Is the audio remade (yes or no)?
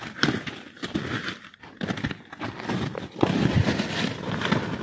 no